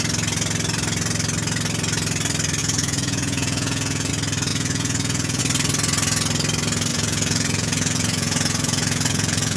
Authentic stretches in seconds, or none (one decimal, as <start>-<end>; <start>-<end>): 0.0-2.6; 4.1-4.5; 5.4-6.9